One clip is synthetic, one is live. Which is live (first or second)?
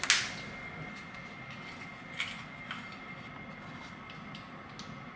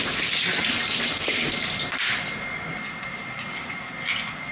first